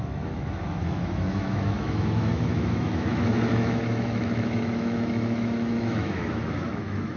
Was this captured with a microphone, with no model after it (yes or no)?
no